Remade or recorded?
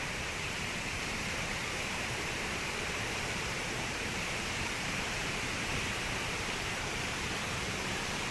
remade